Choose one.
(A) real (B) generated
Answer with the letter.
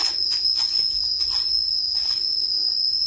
A